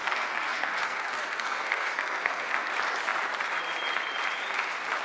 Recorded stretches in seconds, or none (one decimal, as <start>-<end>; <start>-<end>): 2.7-5.0